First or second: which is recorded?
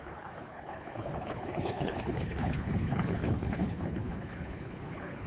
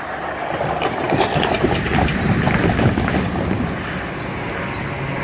second